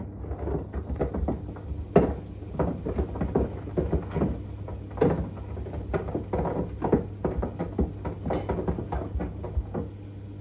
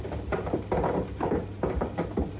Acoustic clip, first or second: first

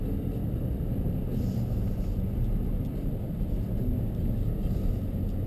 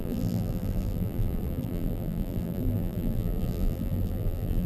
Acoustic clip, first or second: first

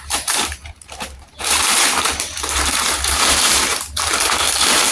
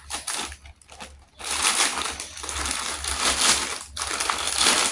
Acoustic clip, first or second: second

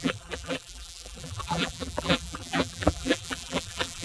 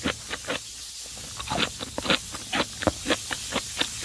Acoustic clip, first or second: second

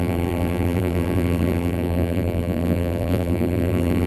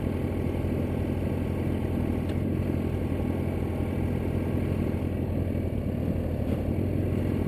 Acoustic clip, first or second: second